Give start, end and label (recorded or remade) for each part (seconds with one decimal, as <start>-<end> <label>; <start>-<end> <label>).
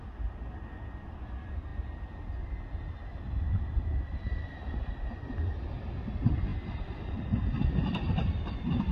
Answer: 0.0-6.5 remade; 6.5-7.1 recorded; 7.1-8.9 remade